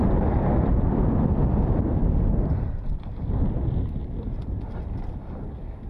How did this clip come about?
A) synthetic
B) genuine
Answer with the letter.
B